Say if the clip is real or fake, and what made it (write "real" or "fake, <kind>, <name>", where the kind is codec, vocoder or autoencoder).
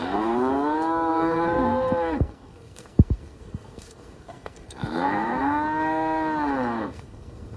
fake, codec, SNAC